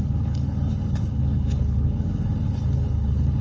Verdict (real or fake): fake